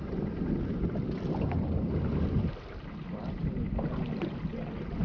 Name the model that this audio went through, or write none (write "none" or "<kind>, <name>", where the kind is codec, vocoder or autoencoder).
none